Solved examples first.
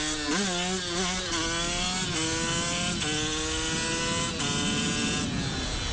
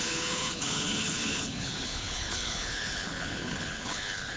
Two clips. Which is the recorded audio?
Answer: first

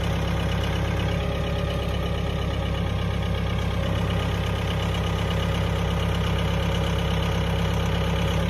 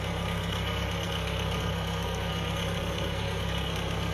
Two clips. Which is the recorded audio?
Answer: first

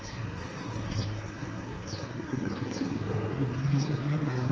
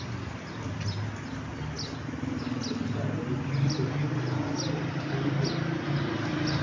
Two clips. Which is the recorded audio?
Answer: second